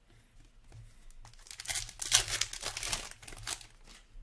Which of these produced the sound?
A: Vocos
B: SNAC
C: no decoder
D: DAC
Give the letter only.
C